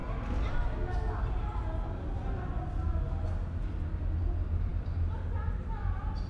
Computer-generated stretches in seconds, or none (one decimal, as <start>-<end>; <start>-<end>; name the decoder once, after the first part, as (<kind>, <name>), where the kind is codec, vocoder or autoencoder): none